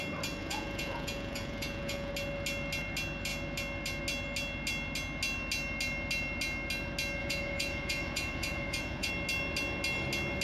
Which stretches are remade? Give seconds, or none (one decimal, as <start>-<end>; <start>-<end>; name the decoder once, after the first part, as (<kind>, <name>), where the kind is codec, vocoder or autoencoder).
0.4-2.1 (vocoder, Vocos); 7.2-9.1